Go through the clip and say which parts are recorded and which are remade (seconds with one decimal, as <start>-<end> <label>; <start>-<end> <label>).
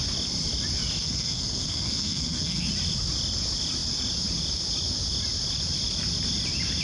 0.0-1.0 recorded; 1.0-2.7 remade; 2.7-6.8 recorded